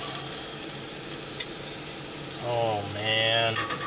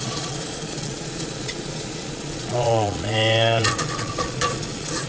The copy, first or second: second